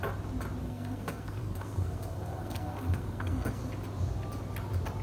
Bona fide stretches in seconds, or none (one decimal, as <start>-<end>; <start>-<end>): 0.0-0.6; 3.6-5.0